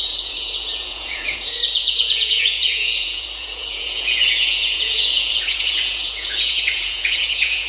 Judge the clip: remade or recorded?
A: remade